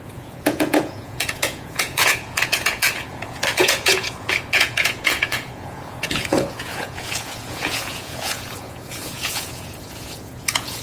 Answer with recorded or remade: remade